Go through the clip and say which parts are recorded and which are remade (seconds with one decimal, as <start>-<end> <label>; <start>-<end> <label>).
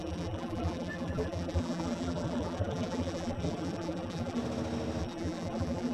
0.0-4.4 remade; 4.4-5.0 recorded; 5.0-5.9 remade